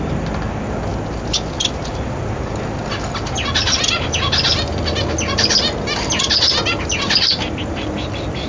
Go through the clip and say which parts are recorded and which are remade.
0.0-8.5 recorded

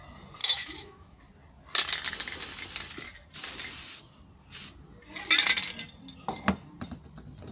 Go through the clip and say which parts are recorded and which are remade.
0.0-0.4 recorded; 0.4-1.2 remade; 1.2-7.5 recorded

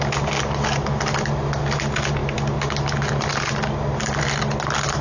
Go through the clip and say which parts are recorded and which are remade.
0.0-5.0 recorded

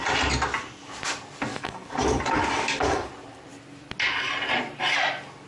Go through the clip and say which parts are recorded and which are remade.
0.0-1.5 recorded; 1.5-3.1 remade; 3.1-5.5 recorded

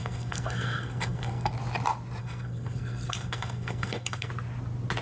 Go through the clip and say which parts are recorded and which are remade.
0.0-1.5 remade; 1.5-2.2 recorded; 2.2-4.3 remade; 4.3-5.0 recorded

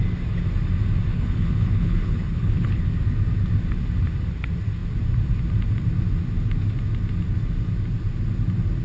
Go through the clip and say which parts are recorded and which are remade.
0.0-1.1 recorded; 1.1-2.8 remade; 2.8-8.8 recorded